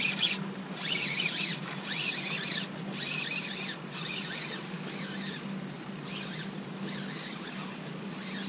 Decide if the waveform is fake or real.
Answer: real